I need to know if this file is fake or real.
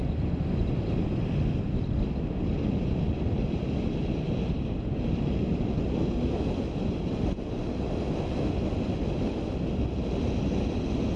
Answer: real